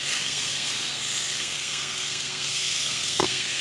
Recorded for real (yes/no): no